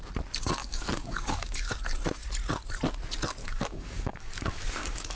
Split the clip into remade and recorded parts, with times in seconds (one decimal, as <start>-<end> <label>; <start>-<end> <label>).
0.0-0.6 recorded; 0.6-1.8 remade; 1.8-3.4 recorded; 3.4-5.2 remade

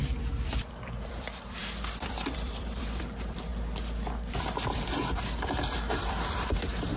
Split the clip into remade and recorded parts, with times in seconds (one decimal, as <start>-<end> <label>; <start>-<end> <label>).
0.0-3.5 remade; 3.5-5.2 recorded; 5.2-7.0 remade